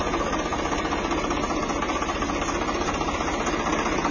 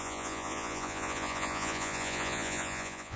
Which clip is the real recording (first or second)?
first